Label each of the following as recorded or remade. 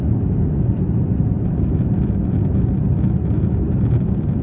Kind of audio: recorded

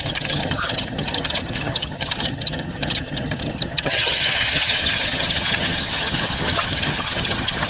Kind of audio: remade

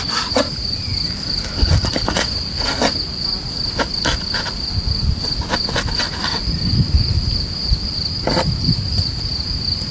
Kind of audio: recorded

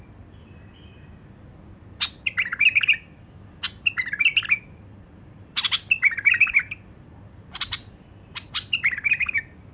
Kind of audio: recorded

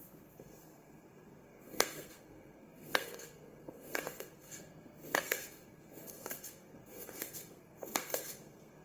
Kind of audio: remade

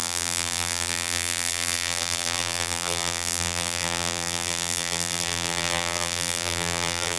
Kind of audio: remade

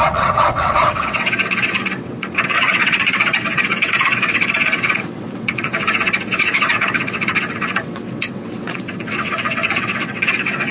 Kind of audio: remade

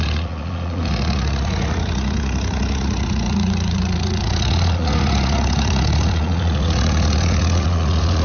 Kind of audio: remade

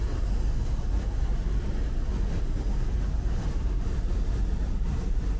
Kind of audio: recorded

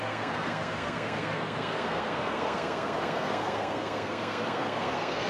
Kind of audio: remade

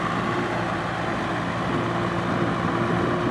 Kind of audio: recorded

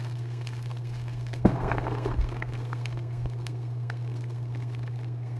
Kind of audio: remade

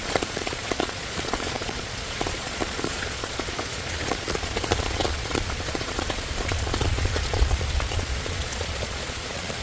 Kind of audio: remade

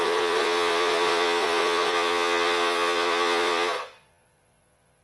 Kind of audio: remade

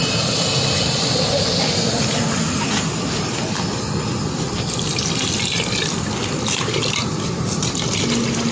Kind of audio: recorded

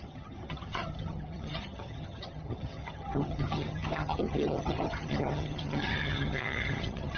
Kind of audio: remade